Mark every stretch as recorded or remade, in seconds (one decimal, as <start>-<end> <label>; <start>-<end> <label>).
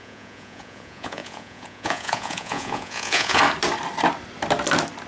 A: 0.0-3.4 remade; 3.4-5.1 recorded